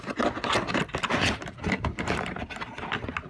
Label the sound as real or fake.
real